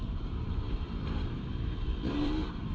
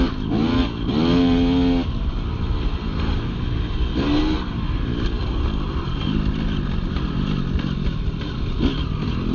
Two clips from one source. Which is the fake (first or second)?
first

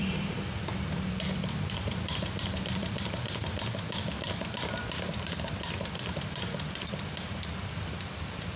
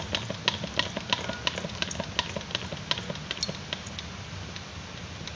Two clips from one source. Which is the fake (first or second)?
first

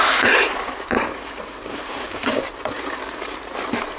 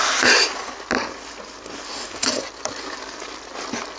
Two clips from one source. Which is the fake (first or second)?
first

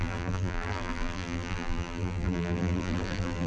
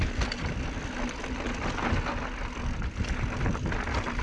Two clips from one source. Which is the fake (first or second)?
first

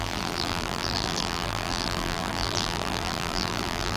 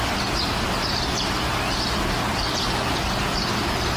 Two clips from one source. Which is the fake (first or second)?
first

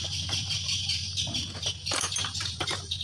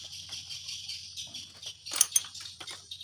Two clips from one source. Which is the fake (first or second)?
first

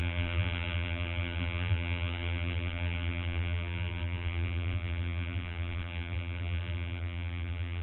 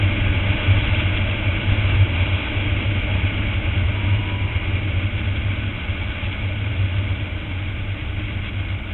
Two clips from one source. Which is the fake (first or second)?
first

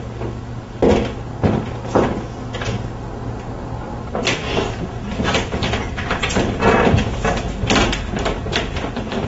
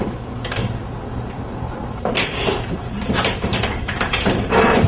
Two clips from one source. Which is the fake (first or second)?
second